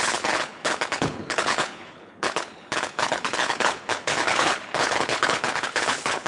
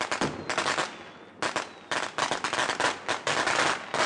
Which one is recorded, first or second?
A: second